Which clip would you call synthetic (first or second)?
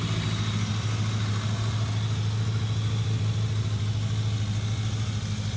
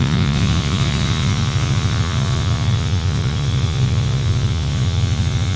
second